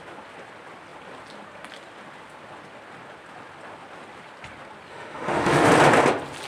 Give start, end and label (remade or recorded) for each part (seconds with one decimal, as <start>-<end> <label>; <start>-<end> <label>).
0.0-4.9 recorded; 4.9-5.7 remade; 5.7-6.5 recorded